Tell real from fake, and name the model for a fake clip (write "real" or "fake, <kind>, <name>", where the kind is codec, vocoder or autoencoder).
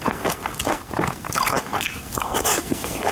fake, codec, SNAC